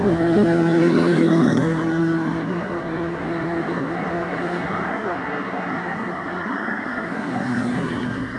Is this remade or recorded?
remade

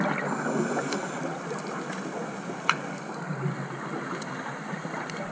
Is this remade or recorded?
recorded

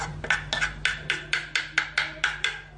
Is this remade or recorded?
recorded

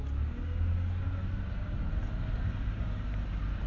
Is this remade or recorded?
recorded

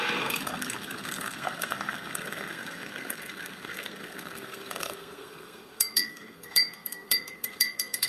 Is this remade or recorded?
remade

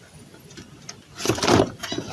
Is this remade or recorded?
recorded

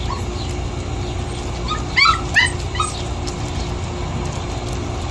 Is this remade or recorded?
recorded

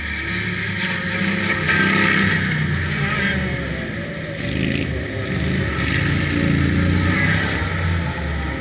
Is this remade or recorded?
recorded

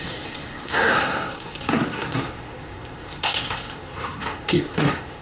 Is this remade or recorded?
remade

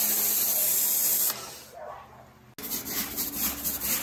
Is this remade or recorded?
recorded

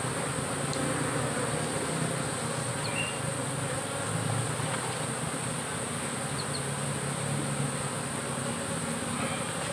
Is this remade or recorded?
recorded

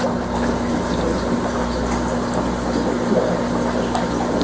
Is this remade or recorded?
recorded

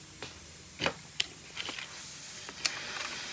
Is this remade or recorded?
recorded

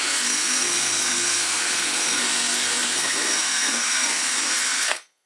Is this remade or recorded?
remade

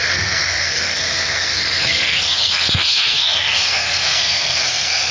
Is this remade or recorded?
remade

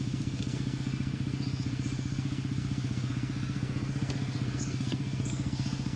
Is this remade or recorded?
remade